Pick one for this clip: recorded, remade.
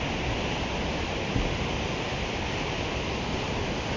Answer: recorded